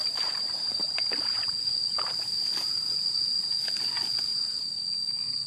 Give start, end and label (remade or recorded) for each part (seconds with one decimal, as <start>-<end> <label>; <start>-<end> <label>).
0.0-1.1 remade; 1.1-4.3 recorded; 4.3-4.9 remade; 4.9-5.5 recorded